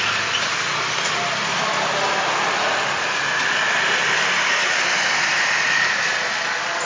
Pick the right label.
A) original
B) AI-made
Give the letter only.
A